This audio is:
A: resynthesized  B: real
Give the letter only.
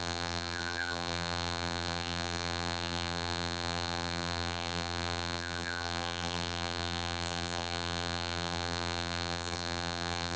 A